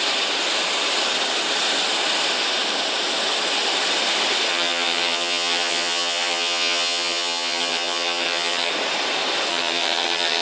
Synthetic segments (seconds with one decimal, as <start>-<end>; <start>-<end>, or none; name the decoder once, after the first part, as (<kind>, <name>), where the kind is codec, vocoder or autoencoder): 4.5-8.7 (vocoder, HiFi-GAN); 9.5-10.4